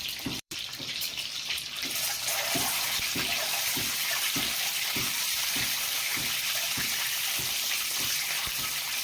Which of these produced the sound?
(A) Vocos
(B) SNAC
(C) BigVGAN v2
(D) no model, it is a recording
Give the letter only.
C